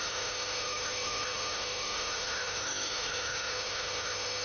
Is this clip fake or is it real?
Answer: fake